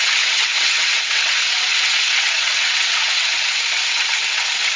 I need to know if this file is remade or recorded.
remade